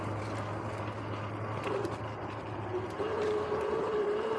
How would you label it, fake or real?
real